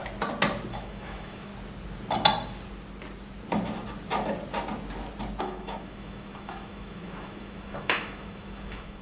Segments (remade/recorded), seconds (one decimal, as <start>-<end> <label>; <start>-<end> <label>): 0.0-0.7 recorded; 0.7-1.5 remade; 1.5-5.4 recorded; 5.4-9.0 remade